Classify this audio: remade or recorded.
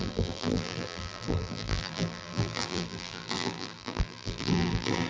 remade